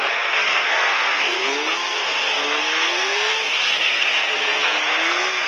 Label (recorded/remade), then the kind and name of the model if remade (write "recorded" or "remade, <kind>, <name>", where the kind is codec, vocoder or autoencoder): remade, codec, SNAC